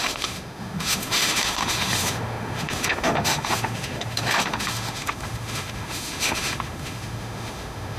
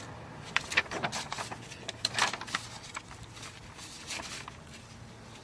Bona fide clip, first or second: second